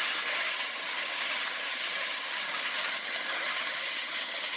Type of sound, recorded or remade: remade